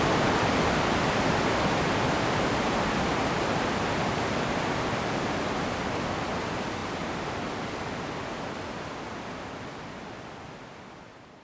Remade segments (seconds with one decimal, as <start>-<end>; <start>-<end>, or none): none